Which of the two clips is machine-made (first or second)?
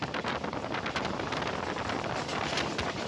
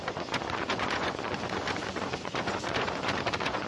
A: second